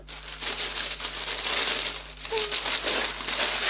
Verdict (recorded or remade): recorded